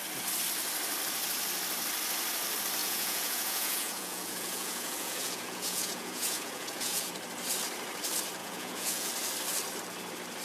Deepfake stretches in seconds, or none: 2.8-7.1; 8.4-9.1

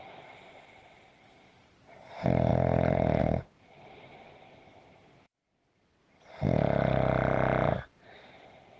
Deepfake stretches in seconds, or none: 0.0-2.5; 3.2-8.8